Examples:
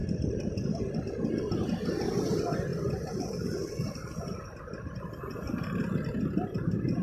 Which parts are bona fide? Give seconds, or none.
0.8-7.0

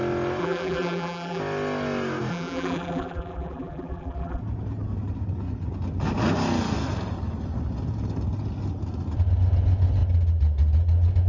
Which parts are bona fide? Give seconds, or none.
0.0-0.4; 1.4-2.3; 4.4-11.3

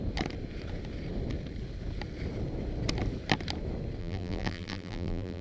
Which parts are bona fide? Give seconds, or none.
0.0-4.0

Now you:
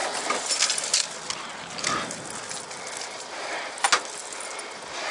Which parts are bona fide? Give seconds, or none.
0.0-4.2

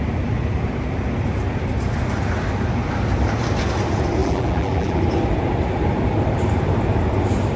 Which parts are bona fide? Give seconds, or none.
0.0-4.2; 5.0-7.6

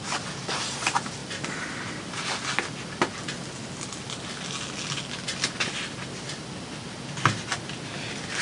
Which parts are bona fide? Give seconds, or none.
0.0-1.2; 2.0-8.4

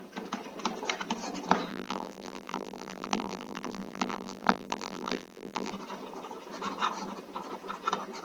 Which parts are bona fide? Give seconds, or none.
0.0-1.7; 5.7-8.2

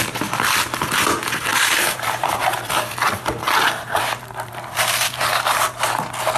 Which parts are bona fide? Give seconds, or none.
0.0-1.5; 5.2-6.4